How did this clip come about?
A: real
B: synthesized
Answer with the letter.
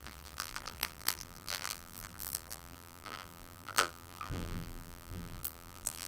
B